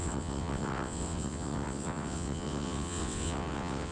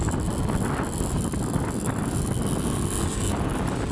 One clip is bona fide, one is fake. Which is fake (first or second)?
first